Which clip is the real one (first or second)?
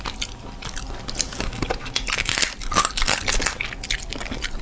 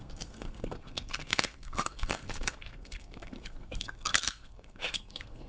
first